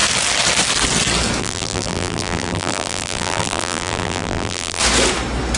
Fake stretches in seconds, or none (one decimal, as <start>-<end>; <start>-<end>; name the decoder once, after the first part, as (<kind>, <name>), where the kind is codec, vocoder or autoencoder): 1.4-4.8 (vocoder, BigVGAN v2)